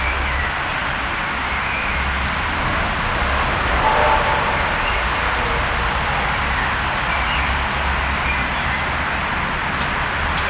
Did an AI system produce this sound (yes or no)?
no